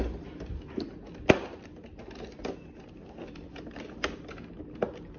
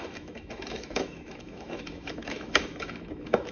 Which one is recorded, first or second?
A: first